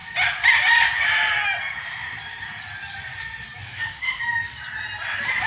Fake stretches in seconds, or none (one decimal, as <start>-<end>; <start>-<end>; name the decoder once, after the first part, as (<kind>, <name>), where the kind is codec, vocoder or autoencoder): 3.6-4.2 (autoencoder, DAC-VAE)